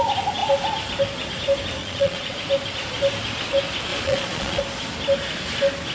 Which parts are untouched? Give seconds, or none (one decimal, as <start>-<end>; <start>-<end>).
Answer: 0.0-1.8; 2.3-3.9; 4.6-5.9